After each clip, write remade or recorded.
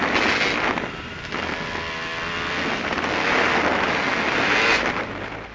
recorded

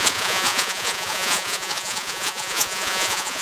remade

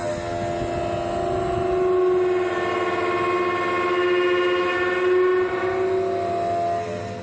recorded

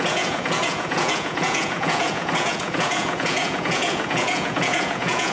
remade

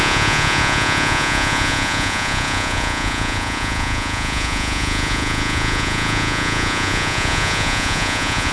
remade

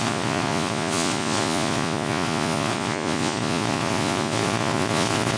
remade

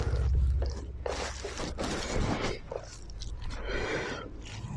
recorded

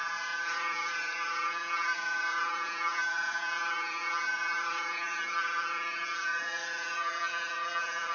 remade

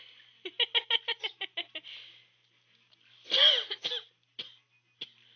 recorded